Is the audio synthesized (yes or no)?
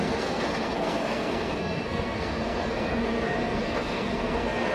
yes